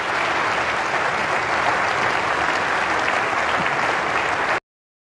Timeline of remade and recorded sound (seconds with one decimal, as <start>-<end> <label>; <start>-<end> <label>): 0.0-5.0 recorded